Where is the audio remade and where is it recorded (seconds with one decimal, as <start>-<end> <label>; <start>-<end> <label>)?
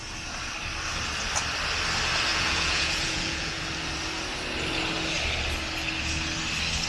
0.0-2.3 recorded; 2.3-3.6 remade; 3.6-6.9 recorded